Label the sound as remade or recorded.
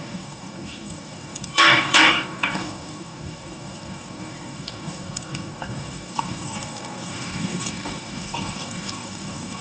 remade